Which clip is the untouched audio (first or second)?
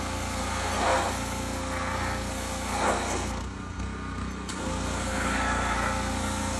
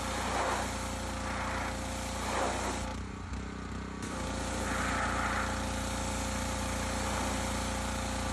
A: second